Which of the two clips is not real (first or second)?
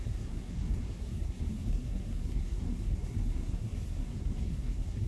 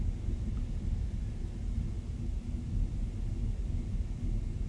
first